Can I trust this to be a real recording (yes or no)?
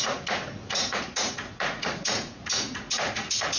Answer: no